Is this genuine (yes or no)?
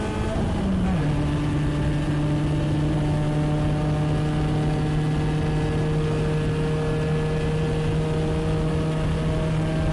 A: yes